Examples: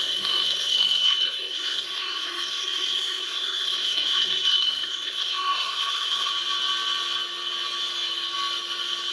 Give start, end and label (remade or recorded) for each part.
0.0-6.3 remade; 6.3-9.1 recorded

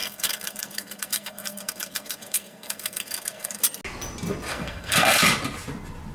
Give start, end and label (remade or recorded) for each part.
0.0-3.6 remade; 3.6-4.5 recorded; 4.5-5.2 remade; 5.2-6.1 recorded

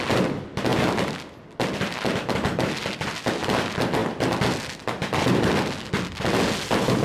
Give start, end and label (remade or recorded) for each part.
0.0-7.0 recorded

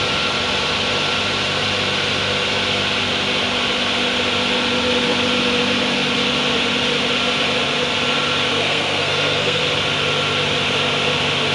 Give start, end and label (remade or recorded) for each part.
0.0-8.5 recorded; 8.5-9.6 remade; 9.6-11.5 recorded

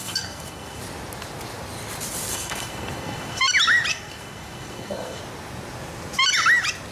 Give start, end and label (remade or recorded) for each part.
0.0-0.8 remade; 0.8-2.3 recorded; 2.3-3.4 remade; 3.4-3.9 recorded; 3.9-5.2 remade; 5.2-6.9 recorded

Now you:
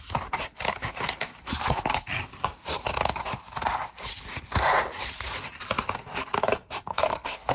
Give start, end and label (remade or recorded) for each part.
0.0-6.9 recorded; 6.9-7.5 remade

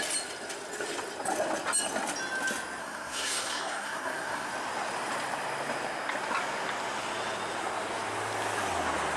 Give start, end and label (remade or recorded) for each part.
0.0-2.8 recorded; 2.8-4.5 remade; 4.5-9.2 recorded

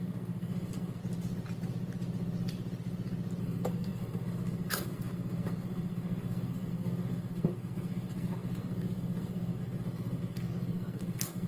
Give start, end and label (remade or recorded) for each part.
0.0-1.0 remade; 1.0-3.4 recorded; 3.4-11.5 remade